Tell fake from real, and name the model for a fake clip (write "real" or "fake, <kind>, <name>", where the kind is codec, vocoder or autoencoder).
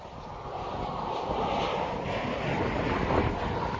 real